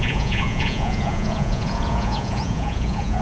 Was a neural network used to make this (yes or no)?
yes